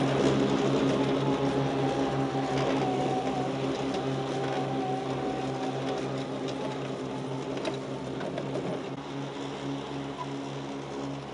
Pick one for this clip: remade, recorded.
recorded